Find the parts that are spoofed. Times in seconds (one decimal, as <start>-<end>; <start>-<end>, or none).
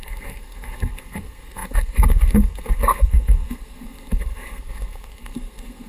0.0-5.9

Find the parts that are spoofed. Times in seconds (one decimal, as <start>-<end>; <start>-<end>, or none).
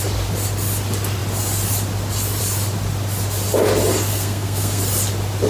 4.1-4.8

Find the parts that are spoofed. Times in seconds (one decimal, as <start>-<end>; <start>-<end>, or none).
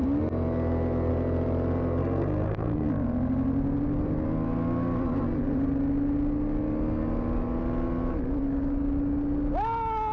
2.0-2.9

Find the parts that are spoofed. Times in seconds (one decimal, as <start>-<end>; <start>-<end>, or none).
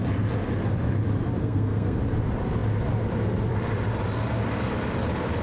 1.4-2.0